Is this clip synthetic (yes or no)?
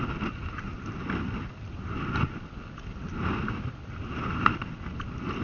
no